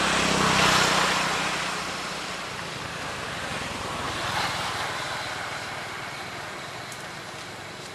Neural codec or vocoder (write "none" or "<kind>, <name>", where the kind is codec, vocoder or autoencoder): none